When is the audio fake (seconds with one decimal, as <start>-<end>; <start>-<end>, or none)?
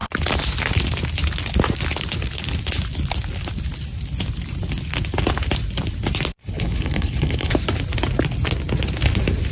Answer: 6.4-7.5